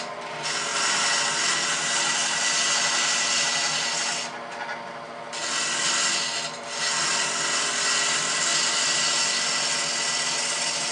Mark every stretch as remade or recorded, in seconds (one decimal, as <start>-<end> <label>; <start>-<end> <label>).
0.0-10.9 recorded